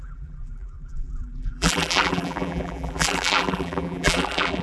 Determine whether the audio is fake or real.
fake